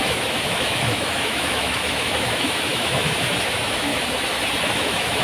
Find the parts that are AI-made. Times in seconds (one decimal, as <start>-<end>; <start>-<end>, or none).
0.0-3.9; 4.7-5.2